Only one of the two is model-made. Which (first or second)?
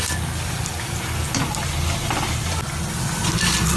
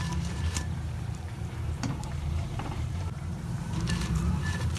second